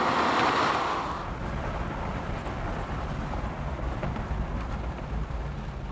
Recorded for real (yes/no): yes